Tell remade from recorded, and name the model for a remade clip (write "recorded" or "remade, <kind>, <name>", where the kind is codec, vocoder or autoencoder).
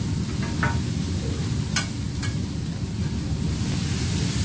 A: recorded